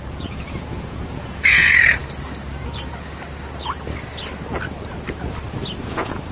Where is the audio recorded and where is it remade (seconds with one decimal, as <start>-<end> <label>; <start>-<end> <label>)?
0.0-2.0 remade; 2.0-5.8 recorded; 5.8-6.3 remade